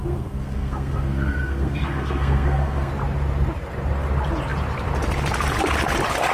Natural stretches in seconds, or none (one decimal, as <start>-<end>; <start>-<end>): 2.9-6.3